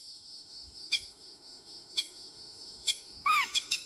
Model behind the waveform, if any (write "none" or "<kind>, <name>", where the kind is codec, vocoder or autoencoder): autoencoder, DAC-VAE